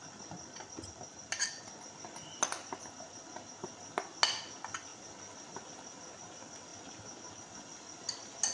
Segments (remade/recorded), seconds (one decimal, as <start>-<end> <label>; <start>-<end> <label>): 0.0-8.5 recorded